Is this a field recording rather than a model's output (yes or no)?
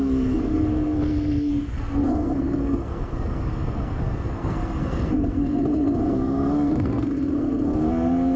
no